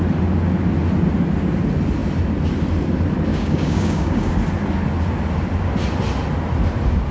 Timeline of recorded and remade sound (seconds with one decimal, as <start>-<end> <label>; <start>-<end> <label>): 0.0-3.3 recorded; 3.3-4.3 remade; 4.3-7.1 recorded